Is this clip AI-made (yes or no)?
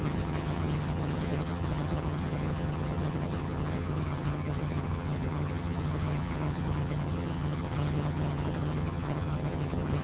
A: yes